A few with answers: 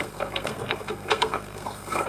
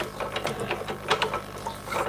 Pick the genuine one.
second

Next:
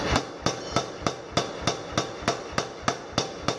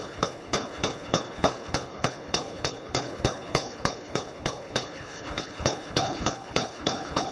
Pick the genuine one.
first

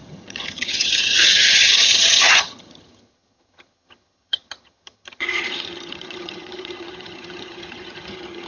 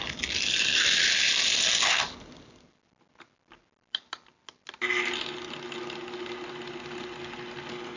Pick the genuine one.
second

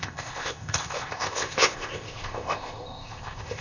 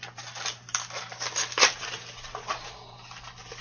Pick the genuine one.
second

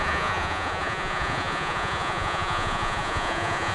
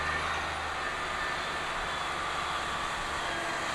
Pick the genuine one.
second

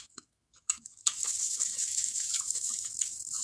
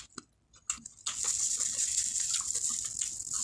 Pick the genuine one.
second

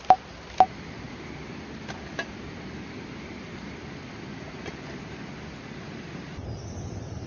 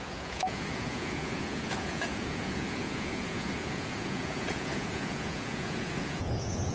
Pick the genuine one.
first